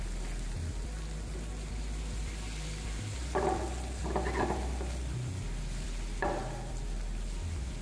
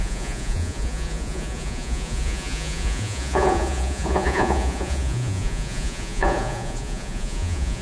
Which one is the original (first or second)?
first